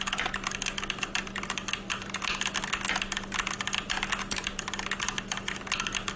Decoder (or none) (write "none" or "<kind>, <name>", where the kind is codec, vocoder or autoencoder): none